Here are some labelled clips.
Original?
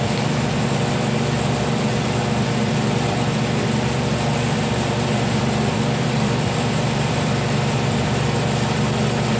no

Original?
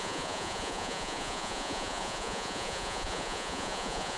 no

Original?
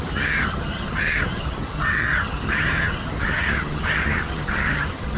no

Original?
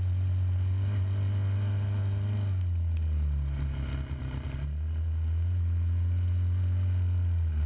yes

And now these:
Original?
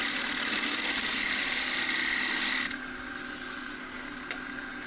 yes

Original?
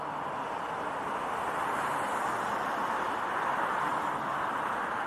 yes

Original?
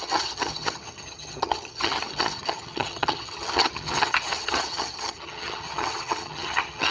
no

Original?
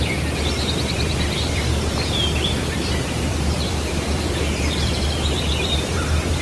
no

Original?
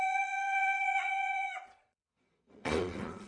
no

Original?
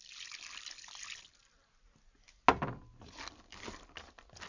yes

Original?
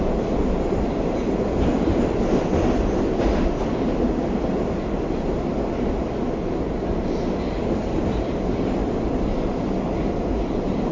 yes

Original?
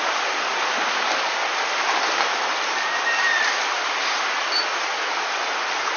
yes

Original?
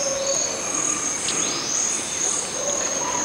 yes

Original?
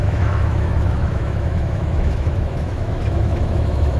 no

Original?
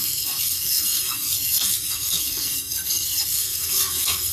no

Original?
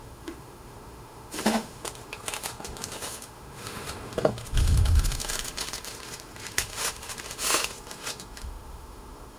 no